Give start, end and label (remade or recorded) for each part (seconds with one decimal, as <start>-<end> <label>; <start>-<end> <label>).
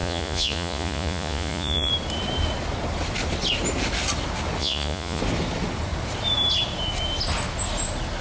0.0-1.9 remade; 1.9-4.6 recorded; 4.6-5.2 remade; 5.2-8.2 recorded